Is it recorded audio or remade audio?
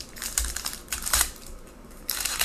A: remade